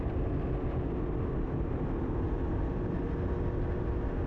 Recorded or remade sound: recorded